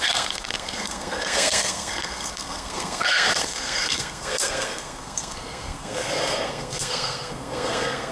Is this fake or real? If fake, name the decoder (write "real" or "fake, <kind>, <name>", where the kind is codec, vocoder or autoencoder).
fake, codec, SNAC